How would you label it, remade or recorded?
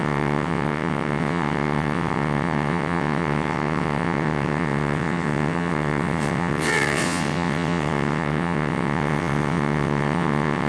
remade